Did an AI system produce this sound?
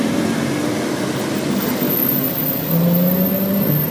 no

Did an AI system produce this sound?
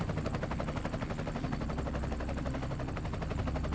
no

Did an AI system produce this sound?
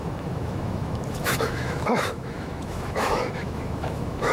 yes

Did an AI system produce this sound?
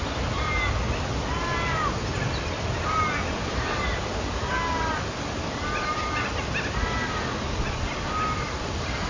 no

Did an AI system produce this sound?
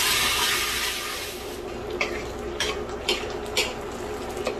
no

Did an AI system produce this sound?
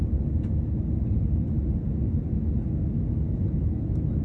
no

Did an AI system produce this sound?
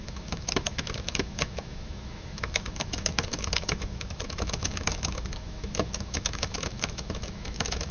yes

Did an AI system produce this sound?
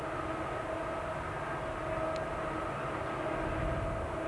no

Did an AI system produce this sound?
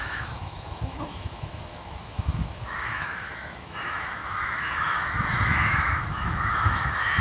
yes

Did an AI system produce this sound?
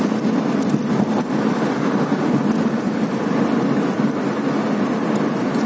no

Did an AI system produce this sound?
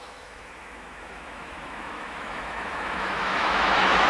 yes